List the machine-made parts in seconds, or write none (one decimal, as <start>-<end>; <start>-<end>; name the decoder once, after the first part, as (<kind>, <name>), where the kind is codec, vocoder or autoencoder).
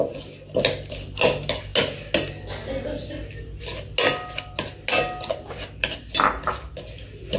none